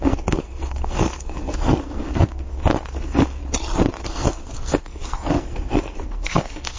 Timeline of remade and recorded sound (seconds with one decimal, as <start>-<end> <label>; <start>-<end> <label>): 0.0-3.4 remade; 3.4-4.0 recorded; 4.0-6.8 remade